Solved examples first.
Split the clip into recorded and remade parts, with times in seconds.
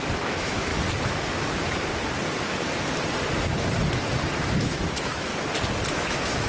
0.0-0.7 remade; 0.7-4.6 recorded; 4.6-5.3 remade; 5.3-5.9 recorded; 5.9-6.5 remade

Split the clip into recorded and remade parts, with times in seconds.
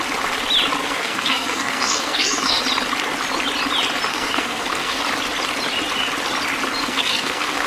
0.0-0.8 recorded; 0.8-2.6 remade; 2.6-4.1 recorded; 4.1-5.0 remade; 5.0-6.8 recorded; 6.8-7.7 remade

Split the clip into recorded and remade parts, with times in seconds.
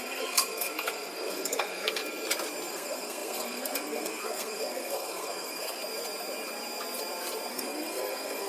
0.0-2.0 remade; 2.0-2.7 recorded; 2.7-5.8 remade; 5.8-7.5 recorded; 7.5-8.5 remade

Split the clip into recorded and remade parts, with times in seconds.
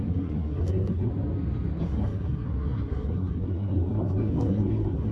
0.0-1.1 remade; 1.1-1.8 recorded; 1.8-5.1 remade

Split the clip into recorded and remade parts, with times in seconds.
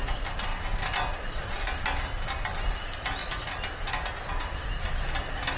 0.0-5.6 recorded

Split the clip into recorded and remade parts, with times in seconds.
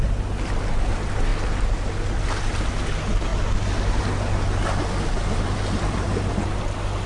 0.0-7.1 recorded